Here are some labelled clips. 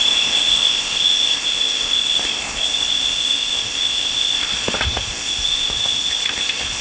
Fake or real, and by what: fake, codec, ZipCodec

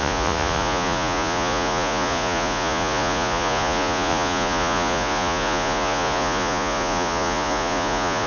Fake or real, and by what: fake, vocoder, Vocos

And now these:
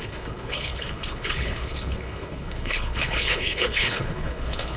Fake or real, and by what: fake, codec, HILCodec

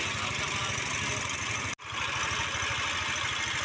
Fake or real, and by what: real